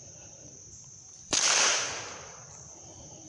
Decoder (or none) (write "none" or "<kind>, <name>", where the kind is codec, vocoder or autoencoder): vocoder, BigVGAN v2